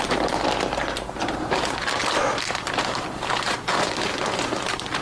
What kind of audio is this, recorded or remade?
remade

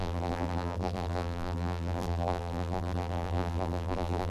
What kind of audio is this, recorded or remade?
remade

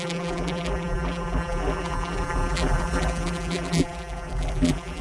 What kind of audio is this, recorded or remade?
remade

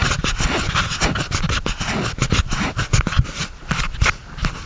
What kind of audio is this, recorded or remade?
recorded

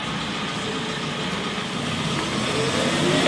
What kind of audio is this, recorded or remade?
recorded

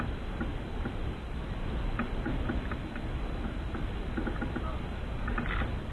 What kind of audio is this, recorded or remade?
recorded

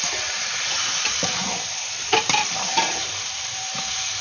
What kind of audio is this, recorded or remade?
remade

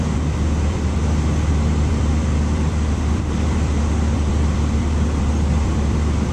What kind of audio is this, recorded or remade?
remade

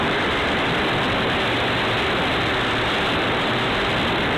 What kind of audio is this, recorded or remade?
remade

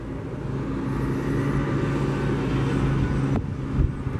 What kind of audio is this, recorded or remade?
recorded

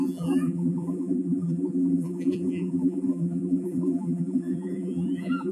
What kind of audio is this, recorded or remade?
remade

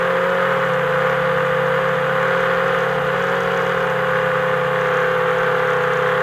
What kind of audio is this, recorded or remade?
recorded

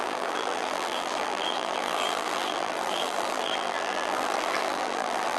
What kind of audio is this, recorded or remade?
remade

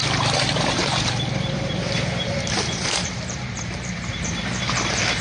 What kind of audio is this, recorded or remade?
remade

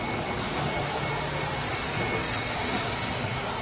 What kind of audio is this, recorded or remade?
recorded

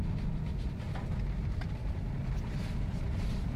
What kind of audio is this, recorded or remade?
recorded